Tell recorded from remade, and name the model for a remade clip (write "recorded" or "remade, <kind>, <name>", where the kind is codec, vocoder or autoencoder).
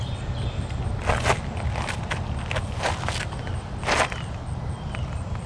recorded